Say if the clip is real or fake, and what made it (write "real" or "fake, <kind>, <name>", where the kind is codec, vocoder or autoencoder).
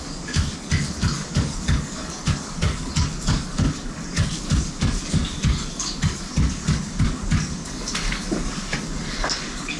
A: fake, codec, DAC